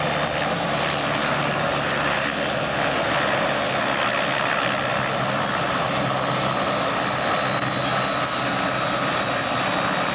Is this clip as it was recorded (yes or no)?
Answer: yes